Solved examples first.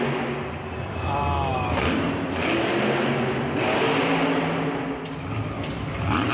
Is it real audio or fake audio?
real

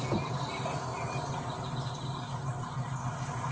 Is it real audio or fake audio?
real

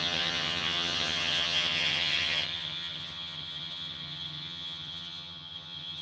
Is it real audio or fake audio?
fake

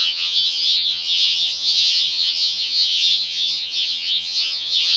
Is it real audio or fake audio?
fake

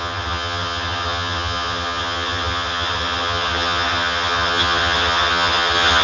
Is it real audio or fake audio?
fake